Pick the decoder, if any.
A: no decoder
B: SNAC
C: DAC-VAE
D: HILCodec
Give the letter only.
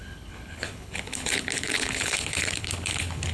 D